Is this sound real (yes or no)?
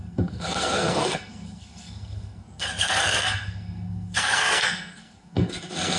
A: no